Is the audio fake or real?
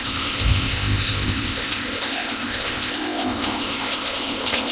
fake